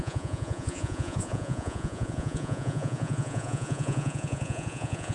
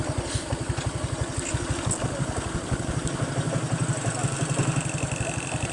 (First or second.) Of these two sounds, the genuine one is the second